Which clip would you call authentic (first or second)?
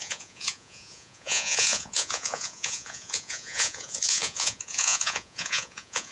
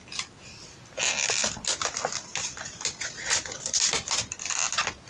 second